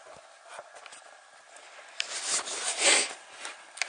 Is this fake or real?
real